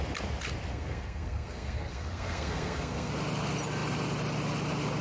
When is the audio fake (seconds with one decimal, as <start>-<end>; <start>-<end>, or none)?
0.7-3.1